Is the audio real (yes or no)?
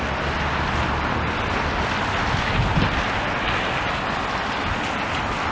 yes